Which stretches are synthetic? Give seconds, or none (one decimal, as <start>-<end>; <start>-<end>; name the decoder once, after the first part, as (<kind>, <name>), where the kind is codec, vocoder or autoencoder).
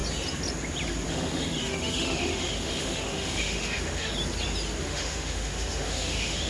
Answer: 1.1-4.1 (autoencoder, DAC-VAE); 4.8-6.5